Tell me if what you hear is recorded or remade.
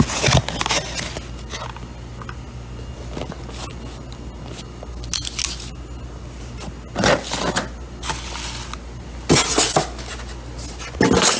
recorded